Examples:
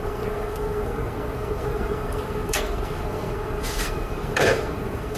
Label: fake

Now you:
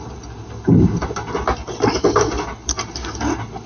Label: real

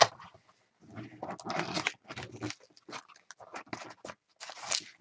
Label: real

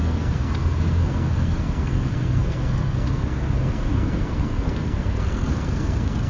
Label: fake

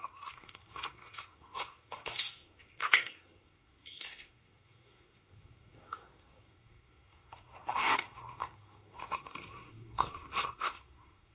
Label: fake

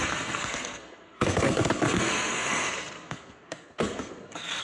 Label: fake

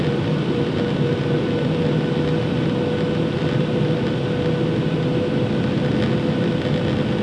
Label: real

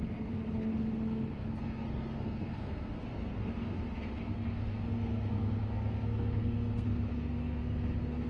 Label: fake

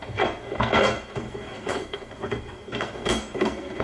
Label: fake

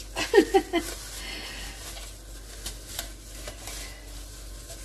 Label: real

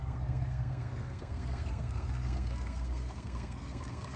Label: fake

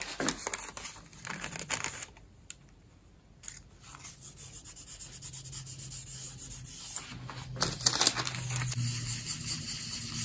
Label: real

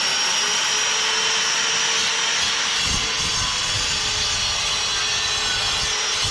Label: real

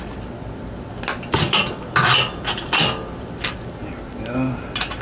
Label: real